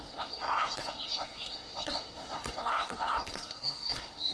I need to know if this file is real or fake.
fake